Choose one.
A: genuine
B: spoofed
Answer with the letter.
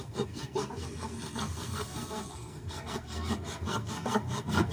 B